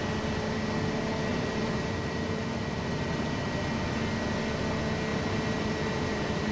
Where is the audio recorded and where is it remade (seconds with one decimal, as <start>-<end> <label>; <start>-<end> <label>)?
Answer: 0.0-1.3 recorded; 1.3-3.5 remade; 3.5-5.1 recorded; 5.1-6.5 remade